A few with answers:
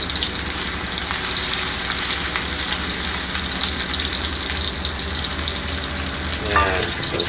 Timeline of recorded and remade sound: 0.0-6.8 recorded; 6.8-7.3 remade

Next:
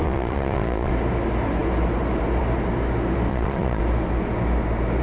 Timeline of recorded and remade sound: 0.0-0.9 remade; 0.9-3.3 recorded; 3.3-3.8 remade; 3.8-5.0 recorded

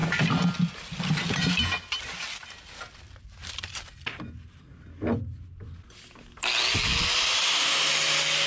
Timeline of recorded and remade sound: 0.0-8.5 recorded

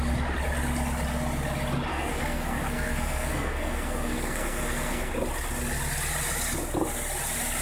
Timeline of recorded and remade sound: 0.0-1.9 recorded; 1.9-5.1 remade; 5.1-7.6 recorded